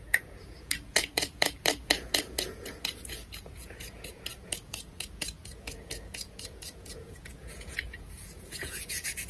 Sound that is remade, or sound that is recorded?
remade